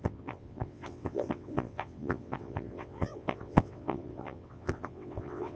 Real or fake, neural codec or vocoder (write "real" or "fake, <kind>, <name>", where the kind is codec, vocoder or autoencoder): fake, vocoder, WaveNeXt